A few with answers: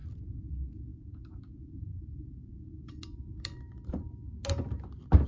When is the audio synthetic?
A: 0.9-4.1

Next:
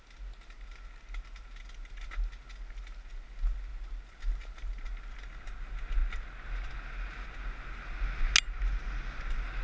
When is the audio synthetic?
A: none

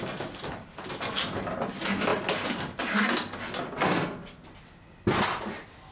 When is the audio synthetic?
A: 2.1-2.8

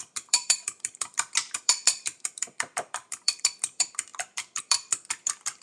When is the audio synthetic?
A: 0.0-5.6